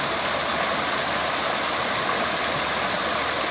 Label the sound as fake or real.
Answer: real